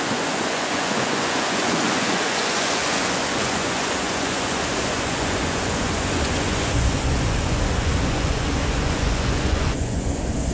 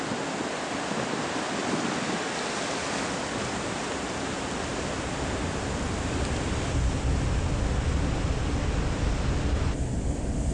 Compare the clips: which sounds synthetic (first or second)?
first